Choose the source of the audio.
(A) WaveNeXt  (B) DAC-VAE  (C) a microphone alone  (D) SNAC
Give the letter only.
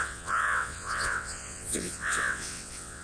A